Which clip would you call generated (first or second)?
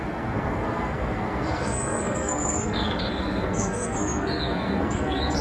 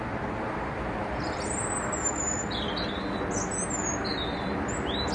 first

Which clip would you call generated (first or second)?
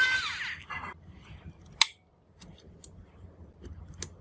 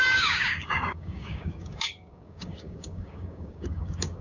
second